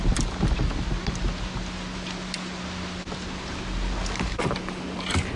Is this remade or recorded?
recorded